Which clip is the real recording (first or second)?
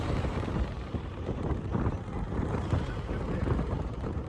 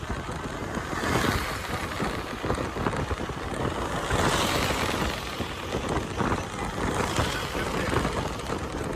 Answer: second